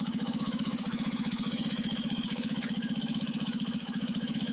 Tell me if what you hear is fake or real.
fake